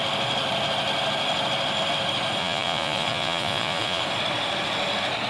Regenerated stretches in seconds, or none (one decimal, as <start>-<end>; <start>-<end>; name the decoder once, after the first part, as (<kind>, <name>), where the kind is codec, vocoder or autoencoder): 2.4-4.0 (vocoder, Vocos)